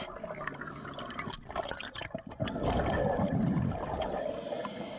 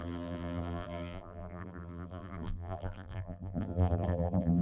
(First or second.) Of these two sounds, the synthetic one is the second